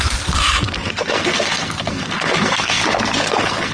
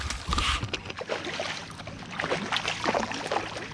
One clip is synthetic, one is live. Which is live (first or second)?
second